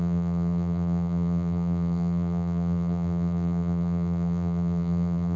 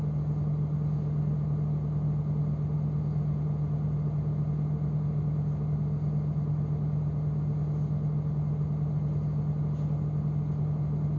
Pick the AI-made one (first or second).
first